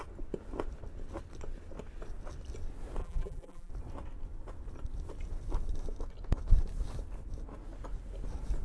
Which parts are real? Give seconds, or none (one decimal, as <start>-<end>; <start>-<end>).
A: 0.0-3.0; 3.7-8.6